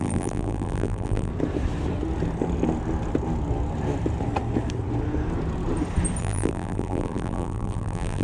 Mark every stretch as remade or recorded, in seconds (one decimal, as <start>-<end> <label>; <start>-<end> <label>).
0.0-1.3 remade; 1.3-6.2 recorded; 6.2-8.2 remade